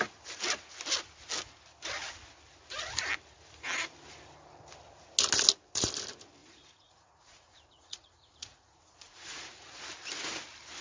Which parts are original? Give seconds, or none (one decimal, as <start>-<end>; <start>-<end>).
0.0-6.4; 9.8-10.8